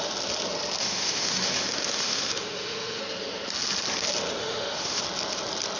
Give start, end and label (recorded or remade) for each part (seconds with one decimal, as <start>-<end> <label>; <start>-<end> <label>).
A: 0.0-0.8 recorded; 0.8-3.0 remade; 3.0-4.4 recorded; 4.4-5.0 remade; 5.0-5.8 recorded